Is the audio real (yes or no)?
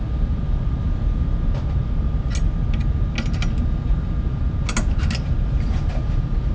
yes